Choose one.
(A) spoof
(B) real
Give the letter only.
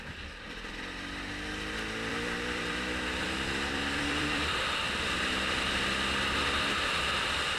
A